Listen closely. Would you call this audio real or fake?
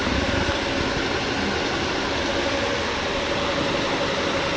real